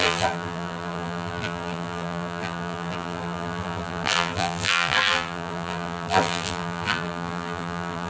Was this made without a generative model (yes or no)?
no